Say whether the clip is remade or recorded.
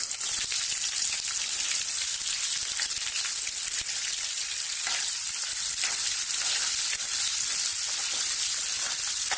recorded